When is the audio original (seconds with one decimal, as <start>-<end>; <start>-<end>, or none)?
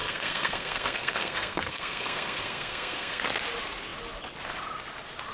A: 3.2-5.3